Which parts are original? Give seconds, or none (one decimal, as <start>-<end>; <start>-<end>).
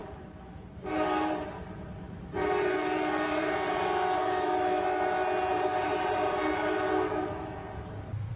4.5-5.5; 6.7-8.4